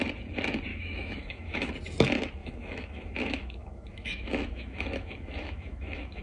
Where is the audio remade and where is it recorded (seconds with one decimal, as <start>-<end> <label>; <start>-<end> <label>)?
0.0-0.7 recorded; 0.7-1.7 remade; 1.7-2.4 recorded; 2.4-6.2 remade